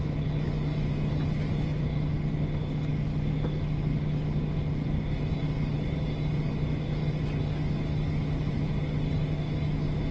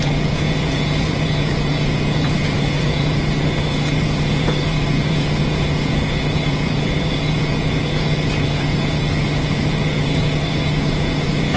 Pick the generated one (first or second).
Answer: second